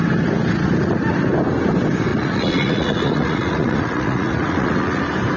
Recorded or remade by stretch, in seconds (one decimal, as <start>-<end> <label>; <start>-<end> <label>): 0.0-2.1 recorded; 2.1-5.0 remade; 5.0-5.4 recorded